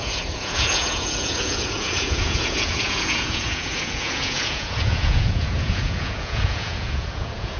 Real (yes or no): no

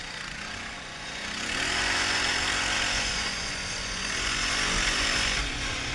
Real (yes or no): no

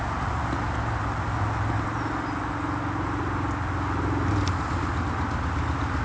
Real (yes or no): yes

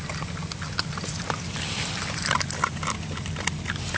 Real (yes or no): yes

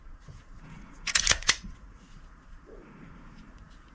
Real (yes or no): no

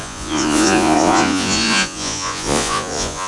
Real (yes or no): no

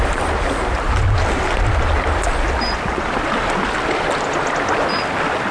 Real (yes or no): yes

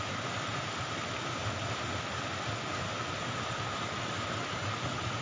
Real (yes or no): yes